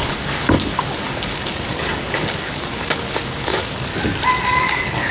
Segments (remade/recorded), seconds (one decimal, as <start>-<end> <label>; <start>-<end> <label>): 0.0-3.9 remade; 3.9-4.5 recorded; 4.5-5.1 remade